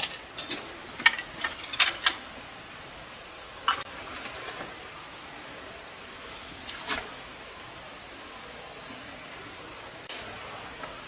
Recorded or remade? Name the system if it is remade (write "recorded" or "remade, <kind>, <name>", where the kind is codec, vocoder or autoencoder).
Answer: recorded